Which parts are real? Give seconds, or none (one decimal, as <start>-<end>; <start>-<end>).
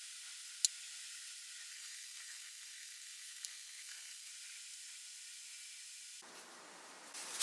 0.0-1.7; 4.3-7.4